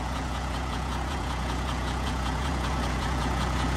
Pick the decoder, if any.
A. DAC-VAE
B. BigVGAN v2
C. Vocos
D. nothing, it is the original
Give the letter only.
C